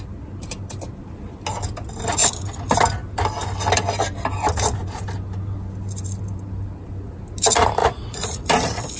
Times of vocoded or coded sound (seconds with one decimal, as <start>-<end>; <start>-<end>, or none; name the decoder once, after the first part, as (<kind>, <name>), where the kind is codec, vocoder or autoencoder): 7.8-8.4 (vocoder, Vocos)